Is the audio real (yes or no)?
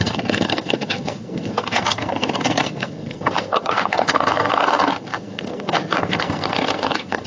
no